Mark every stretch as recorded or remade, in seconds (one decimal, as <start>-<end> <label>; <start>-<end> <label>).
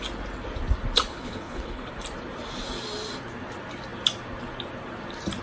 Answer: 0.0-1.1 recorded; 1.1-1.9 remade; 1.9-5.4 recorded